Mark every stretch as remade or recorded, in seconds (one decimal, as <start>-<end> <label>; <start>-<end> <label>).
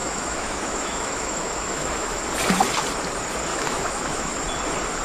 0.0-2.2 remade; 2.2-3.5 recorded; 3.5-4.3 remade; 4.3-5.0 recorded